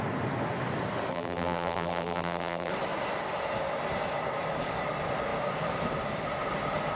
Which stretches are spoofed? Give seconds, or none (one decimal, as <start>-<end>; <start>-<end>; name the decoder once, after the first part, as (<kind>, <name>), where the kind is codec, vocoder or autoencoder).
1.1-2.7 (vocoder, BigVGAN v2)